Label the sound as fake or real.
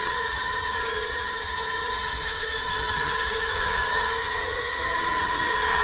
fake